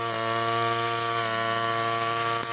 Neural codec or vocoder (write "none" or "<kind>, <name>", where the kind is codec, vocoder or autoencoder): vocoder, BigVGAN v2